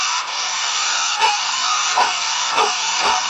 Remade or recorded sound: remade